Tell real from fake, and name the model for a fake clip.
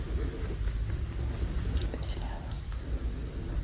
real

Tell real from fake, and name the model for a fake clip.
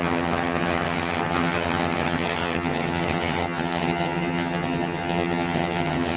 fake, vocoder, HiFi-GAN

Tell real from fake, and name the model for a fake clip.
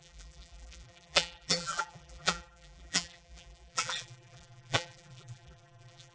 fake, vocoder, BigVGAN v2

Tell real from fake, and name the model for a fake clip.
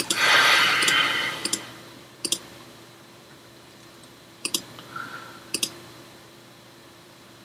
fake, vocoder, BigVGAN v2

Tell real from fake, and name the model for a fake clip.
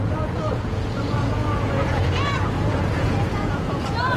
fake, vocoder, Vocos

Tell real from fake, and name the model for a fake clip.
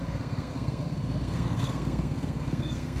fake, codec, SNAC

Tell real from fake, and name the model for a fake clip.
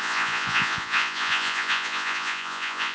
fake, vocoder, Vocos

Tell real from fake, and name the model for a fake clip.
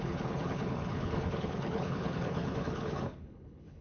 fake, codec, HILCodec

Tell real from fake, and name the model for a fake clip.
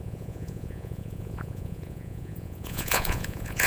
fake, vocoder, Vocos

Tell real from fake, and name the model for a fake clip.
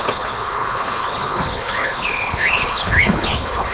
fake, codec, HILCodec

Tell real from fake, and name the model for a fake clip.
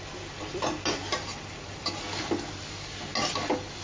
real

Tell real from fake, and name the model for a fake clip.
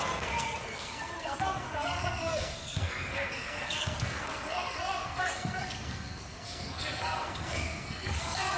fake, codec, SNAC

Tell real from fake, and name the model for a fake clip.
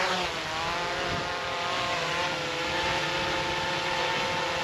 real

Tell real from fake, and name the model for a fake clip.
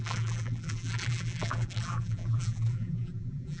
fake, vocoder, BigVGAN v2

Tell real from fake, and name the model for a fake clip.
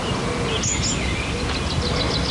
real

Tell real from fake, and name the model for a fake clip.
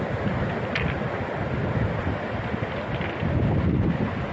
real